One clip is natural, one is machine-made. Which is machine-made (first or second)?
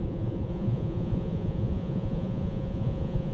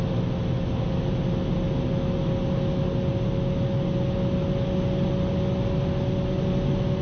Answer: first